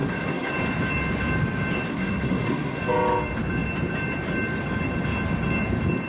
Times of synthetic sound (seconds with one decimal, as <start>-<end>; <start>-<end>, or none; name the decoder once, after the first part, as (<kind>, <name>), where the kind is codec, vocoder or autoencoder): 0.0-0.5 (codec, SNAC); 1.9-2.8